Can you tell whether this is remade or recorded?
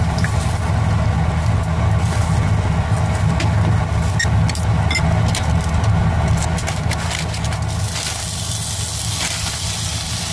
recorded